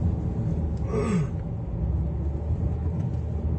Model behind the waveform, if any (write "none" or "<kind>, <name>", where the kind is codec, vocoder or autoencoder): none